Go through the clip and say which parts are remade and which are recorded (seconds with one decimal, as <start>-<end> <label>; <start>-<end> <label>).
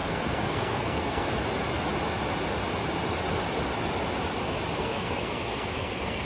0.0-1.3 remade; 1.3-4.8 recorded; 4.8-6.3 remade